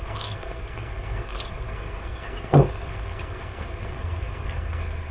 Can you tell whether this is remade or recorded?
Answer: remade